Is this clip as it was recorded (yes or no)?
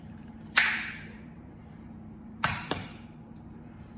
no